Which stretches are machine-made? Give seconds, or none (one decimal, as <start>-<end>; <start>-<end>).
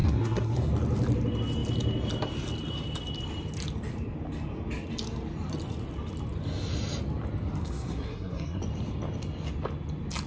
0.0-0.7; 7.6-8.6